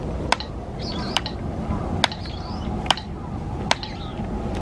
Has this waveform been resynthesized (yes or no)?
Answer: no